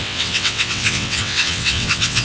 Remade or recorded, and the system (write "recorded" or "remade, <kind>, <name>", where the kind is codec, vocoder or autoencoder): remade, vocoder, WaveNeXt